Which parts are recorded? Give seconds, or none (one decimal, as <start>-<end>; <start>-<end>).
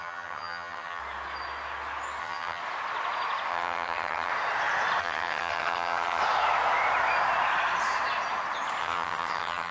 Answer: 1.0-2.2; 2.6-3.5; 4.3-5.0; 6.2-8.8